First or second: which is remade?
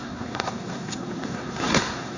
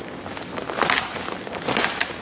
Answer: first